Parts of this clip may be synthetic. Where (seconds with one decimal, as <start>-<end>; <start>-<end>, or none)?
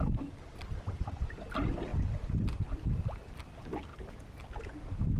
none